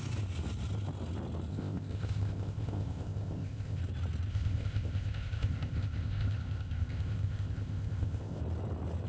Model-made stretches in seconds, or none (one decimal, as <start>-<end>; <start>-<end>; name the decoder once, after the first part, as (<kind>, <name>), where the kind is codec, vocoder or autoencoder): 1.5-3.8 (codec, ZipCodec); 4.3-8.4